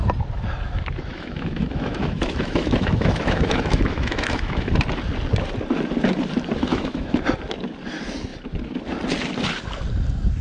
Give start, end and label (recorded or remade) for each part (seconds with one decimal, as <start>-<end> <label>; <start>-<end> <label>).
0.0-1.1 recorded; 1.1-4.7 remade; 4.7-6.7 recorded; 6.7-7.2 remade; 7.2-10.4 recorded